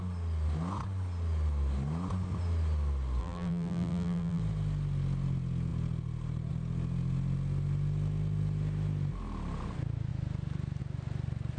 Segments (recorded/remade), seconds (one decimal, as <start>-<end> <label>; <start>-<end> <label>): 0.0-3.2 recorded; 3.2-4.4 remade; 4.4-11.6 recorded